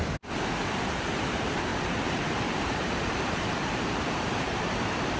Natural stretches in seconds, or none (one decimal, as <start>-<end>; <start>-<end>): 0.0-1.7; 4.6-5.2